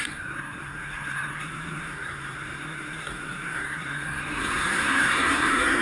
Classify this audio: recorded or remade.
remade